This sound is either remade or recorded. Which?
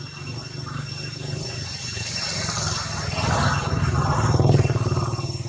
recorded